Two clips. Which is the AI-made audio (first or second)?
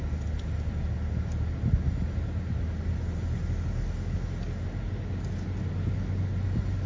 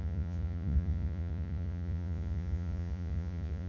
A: second